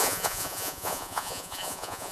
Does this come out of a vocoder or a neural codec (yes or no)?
yes